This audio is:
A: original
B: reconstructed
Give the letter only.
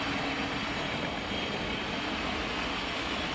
A